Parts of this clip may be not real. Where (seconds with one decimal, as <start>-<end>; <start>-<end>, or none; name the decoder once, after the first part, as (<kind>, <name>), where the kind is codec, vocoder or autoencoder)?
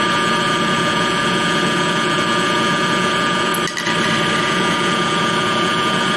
0.0-3.5 (vocoder, Vocos); 4.4-6.2